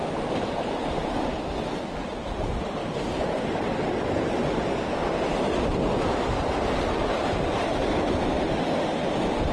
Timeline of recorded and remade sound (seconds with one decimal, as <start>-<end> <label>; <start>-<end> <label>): 0.0-9.5 recorded